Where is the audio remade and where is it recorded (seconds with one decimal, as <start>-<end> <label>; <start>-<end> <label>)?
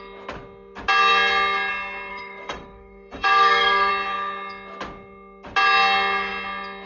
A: 0.0-2.1 recorded; 2.1-3.9 remade; 3.9-6.9 recorded